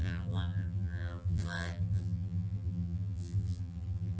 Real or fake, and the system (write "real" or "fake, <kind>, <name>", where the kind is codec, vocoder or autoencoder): fake, vocoder, BigVGAN v2